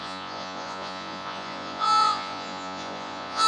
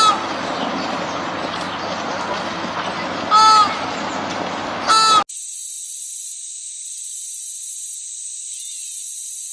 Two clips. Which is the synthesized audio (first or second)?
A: first